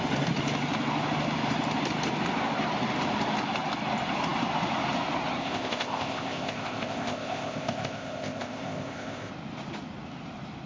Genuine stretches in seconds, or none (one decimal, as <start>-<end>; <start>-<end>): 0.0-5.4; 9.3-10.7

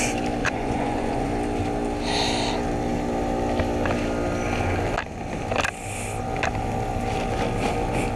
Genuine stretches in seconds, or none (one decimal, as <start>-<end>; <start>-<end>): 0.0-0.4; 1.3-8.2

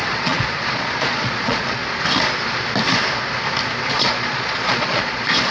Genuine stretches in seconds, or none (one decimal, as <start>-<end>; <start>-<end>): 1.8-3.9

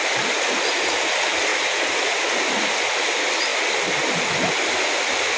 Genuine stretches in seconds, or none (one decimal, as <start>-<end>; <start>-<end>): 0.0-1.5; 2.2-5.4

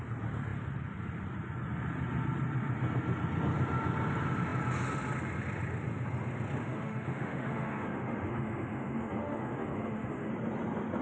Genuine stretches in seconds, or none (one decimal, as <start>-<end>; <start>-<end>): 0.0-6.6; 10.3-11.0

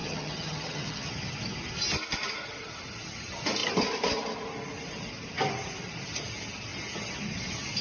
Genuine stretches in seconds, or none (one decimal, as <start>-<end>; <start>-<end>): 1.1-7.8

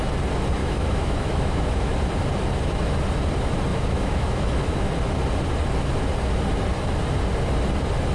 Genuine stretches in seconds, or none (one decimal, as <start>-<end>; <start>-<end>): 0.0-0.6; 1.9-3.7; 4.9-8.1